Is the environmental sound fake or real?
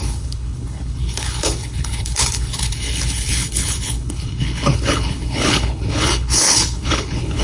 fake